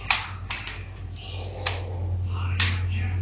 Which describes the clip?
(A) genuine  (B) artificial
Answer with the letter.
A